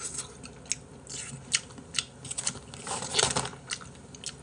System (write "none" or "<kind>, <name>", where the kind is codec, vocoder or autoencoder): none